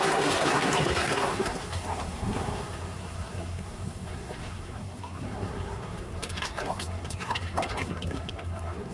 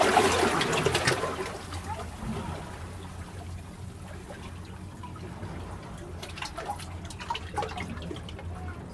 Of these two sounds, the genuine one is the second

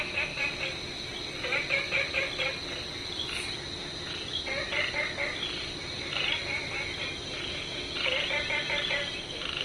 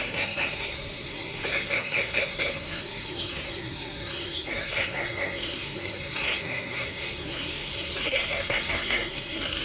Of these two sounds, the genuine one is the first